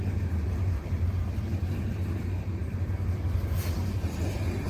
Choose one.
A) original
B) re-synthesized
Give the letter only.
A